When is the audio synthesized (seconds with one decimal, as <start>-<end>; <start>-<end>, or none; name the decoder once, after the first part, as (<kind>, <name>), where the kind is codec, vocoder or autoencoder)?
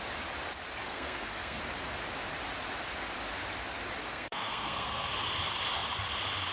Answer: 0.8-1.6 (codec, SNAC); 4.0-5.1